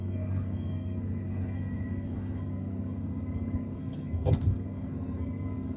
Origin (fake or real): fake